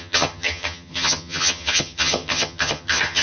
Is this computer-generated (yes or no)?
yes